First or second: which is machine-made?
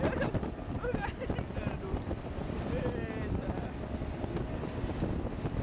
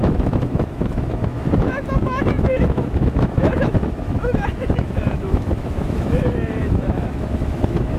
second